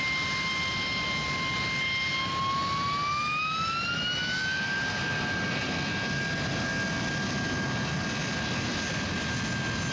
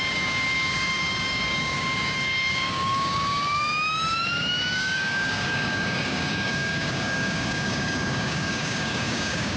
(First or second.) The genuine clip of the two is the first